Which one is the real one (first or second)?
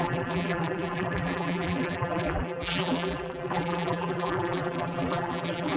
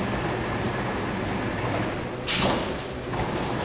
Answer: second